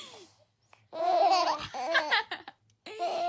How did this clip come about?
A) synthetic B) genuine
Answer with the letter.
B